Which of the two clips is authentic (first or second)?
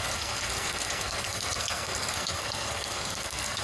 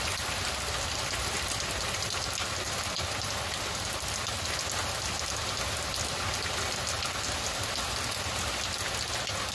second